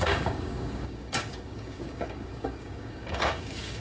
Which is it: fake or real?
fake